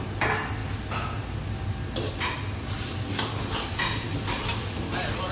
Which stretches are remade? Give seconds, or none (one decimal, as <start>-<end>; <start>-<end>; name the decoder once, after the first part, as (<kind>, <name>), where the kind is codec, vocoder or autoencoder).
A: none